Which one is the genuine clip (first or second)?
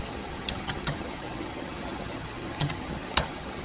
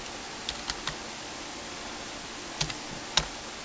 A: second